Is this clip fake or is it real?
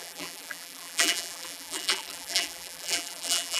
fake